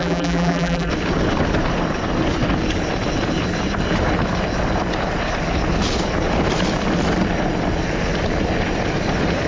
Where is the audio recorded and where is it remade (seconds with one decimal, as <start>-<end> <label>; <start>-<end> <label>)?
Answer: 0.0-0.9 remade; 0.9-9.5 recorded